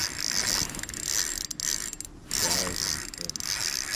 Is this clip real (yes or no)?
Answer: yes